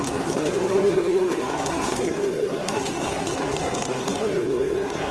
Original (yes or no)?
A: no